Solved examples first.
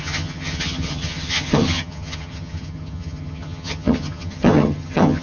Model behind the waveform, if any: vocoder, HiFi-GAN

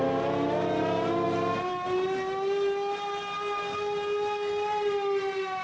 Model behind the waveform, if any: none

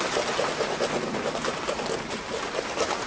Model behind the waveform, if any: none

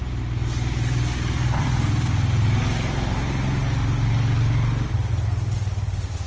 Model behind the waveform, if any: none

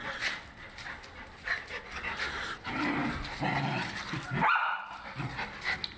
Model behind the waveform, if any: none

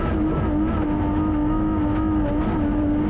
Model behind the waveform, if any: none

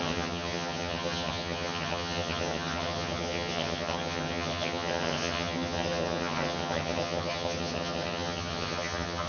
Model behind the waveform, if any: vocoder, HiFi-GAN